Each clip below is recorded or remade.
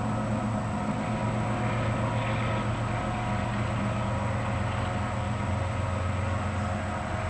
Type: recorded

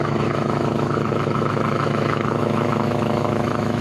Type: remade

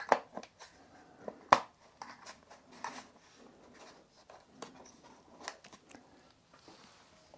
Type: recorded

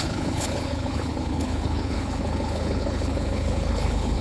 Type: remade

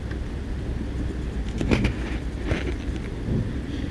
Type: recorded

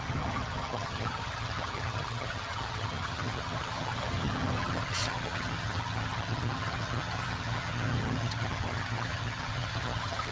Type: remade